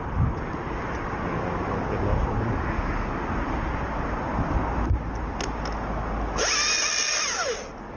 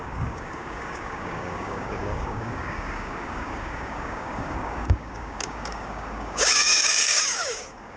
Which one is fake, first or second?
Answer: second